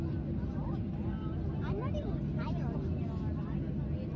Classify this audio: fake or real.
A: real